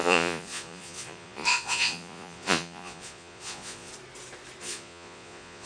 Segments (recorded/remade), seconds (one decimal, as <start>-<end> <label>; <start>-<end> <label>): 0.0-3.9 remade; 3.9-4.6 recorded; 4.6-5.7 remade